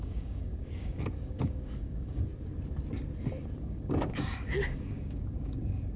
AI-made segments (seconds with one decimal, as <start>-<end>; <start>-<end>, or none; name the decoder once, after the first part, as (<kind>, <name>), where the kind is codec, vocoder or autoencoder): 0.0-2.3 (codec, DAC); 3.6-6.0